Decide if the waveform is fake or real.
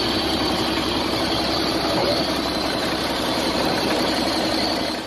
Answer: fake